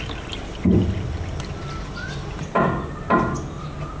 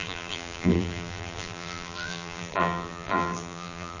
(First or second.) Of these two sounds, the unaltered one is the first